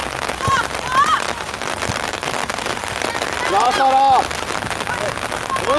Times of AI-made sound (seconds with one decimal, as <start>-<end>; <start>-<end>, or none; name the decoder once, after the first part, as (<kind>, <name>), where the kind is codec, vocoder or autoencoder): none